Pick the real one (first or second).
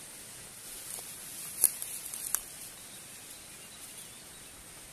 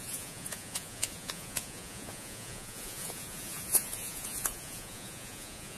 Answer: first